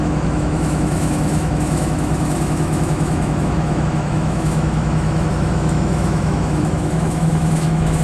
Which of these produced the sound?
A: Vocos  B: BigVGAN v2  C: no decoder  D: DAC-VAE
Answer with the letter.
D